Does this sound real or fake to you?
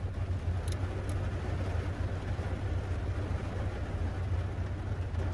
real